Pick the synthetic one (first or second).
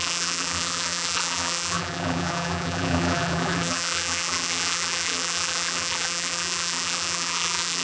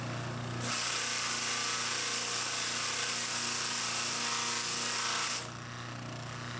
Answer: first